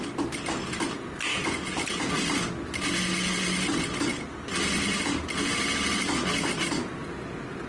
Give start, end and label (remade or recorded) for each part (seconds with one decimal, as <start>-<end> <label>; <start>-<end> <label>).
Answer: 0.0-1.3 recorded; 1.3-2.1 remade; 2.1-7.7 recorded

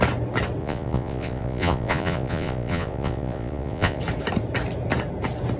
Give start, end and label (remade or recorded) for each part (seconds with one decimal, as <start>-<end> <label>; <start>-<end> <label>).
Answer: 0.0-0.6 recorded; 0.6-4.0 remade; 4.0-5.6 recorded

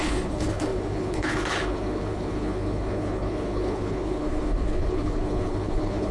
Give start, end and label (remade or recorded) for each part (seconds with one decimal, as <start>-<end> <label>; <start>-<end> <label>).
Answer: 0.0-6.1 remade